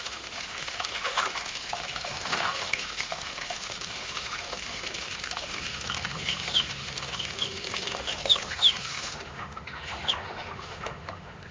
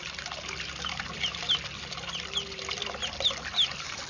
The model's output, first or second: first